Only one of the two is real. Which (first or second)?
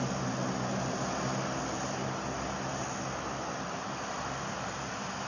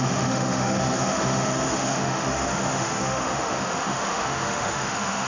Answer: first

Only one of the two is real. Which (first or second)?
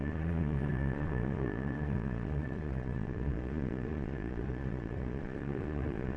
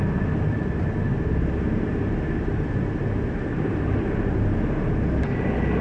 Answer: second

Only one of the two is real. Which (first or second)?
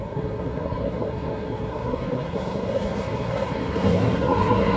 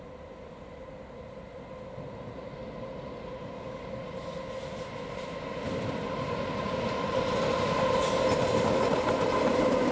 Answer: second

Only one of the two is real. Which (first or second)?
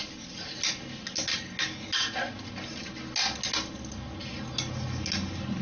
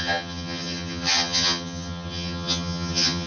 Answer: first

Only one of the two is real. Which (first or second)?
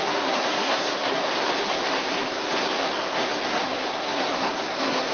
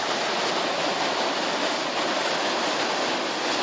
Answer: second